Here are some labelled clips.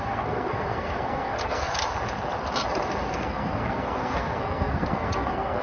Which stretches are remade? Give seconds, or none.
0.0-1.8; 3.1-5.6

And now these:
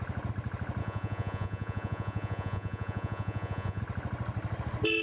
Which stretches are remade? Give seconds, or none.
0.8-3.8

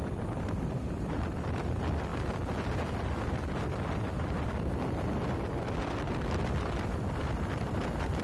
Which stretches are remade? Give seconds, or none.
0.0-2.1; 6.5-8.2

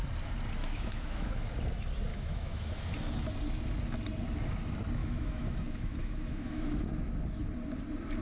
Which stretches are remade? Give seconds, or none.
0.6-1.3; 2.1-2.8; 5.0-6.6

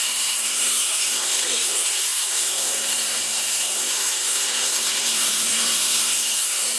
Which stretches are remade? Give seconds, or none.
0.0-6.8